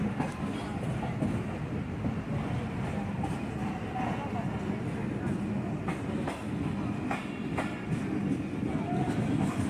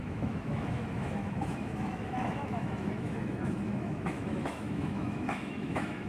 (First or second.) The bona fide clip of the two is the first